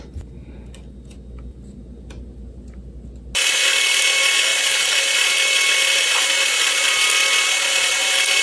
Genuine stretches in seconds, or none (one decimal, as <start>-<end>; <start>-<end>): 0.0-8.4